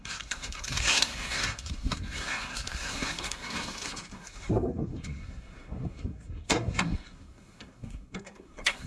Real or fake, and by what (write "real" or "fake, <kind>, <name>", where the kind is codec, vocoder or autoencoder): fake, codec, SNAC